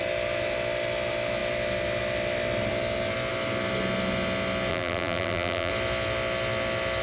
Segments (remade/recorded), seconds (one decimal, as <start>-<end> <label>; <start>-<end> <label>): 0.0-4.7 recorded; 4.7-5.7 remade; 5.7-7.0 recorded